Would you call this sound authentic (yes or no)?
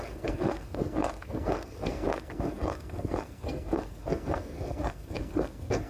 no